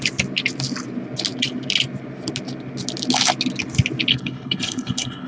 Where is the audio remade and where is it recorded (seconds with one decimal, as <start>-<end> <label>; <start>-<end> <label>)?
0.0-4.1 recorded; 4.1-5.3 remade